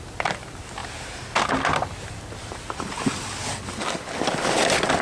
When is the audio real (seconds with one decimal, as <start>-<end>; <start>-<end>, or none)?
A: 0.0-5.0